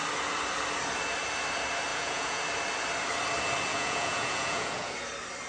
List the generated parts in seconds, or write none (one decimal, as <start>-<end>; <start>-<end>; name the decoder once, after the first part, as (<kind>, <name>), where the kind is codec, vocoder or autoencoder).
1.9-2.4 (vocoder, Vocos); 3.7-4.9